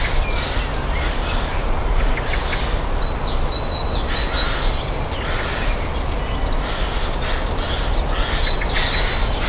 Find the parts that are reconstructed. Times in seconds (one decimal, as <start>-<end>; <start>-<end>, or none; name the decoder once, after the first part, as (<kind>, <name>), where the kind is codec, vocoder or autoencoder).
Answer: none